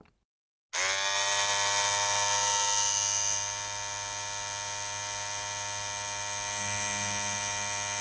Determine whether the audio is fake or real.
real